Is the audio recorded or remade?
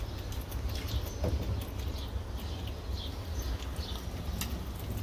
recorded